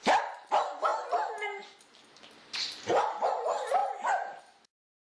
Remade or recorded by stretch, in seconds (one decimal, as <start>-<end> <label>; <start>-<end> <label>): 0.0-5.0 recorded